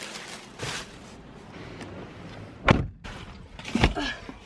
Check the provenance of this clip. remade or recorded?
recorded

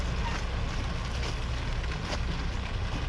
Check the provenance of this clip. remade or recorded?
recorded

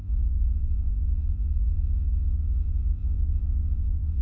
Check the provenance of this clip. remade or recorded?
remade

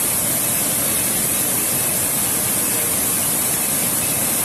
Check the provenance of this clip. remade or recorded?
recorded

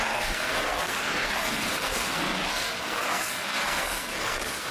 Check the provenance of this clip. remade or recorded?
remade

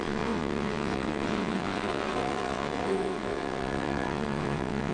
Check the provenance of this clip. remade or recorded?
remade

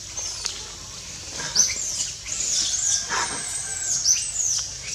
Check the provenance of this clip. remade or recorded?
recorded